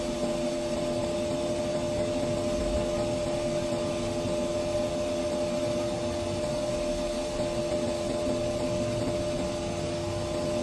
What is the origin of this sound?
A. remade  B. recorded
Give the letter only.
B